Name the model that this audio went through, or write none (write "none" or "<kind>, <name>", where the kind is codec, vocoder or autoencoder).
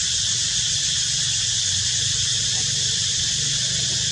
none